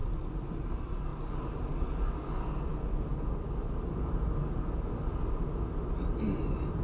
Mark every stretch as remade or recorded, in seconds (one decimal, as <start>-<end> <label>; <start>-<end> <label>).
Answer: 0.0-6.8 recorded